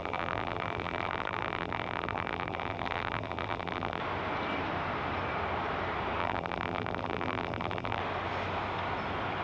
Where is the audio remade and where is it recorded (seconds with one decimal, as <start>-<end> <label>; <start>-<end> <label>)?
0.0-4.0 remade; 4.0-6.2 recorded; 6.2-8.0 remade; 8.0-9.4 recorded